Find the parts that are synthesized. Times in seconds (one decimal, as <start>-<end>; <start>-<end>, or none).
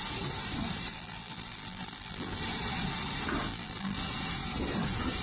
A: 0.9-2.4; 3.5-4.0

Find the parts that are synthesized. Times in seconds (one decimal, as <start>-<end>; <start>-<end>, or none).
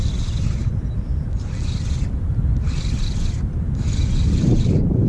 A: none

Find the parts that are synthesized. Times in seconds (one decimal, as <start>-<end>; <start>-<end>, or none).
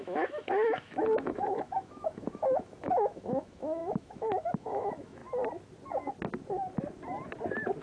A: 0.0-5.2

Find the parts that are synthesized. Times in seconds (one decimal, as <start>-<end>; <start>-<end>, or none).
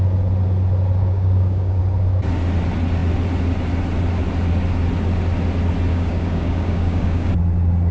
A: 1.0-1.8; 5.9-7.3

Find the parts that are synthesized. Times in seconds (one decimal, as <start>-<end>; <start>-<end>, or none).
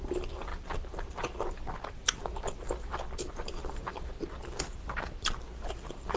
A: none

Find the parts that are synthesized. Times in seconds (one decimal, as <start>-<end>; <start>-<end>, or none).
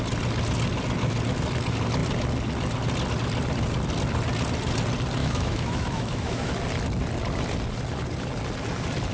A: 5.2-6.5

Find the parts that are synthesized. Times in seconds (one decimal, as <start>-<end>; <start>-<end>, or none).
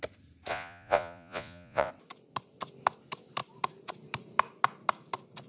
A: 0.5-1.9